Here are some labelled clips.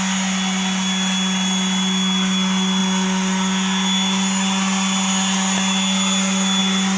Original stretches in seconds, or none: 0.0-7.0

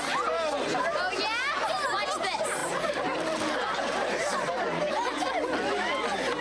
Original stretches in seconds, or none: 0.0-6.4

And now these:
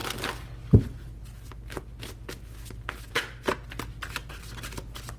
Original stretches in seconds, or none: 0.0-5.2